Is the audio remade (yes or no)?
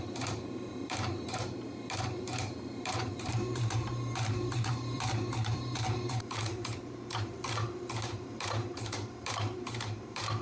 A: yes